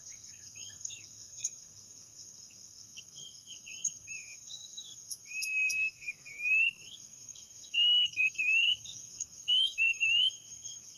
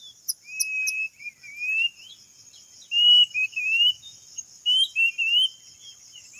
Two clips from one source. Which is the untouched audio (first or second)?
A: second